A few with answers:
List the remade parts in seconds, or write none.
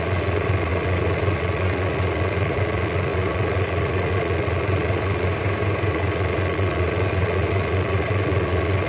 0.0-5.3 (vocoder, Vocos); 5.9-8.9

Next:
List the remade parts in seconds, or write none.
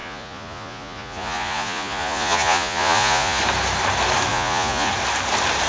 0.0-3.4 (vocoder, Vocos); 4.3-4.9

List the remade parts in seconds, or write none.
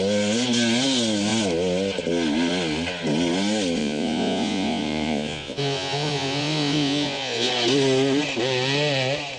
3.8-7.5 (vocoder, Vocos)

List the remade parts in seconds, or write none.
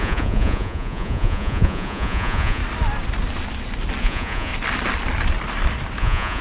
0.0-2.6 (vocoder, Vocos); 4.0-4.5; 6.0-6.4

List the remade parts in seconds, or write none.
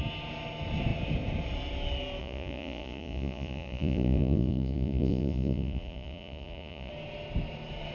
2.2-6.9 (vocoder, Vocos)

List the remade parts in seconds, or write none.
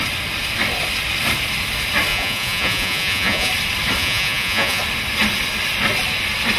2.1-3.5 (vocoder, Vocos); 4.0-4.8